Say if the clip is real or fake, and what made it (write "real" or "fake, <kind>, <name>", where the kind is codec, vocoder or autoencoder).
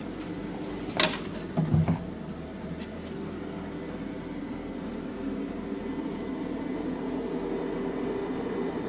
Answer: real